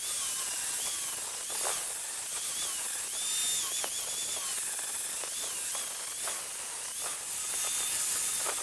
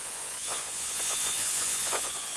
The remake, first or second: second